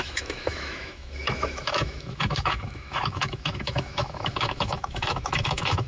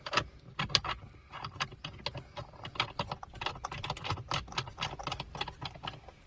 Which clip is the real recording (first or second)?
second